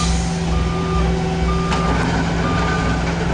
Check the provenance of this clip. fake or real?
real